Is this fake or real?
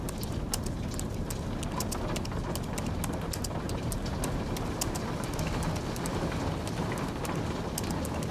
real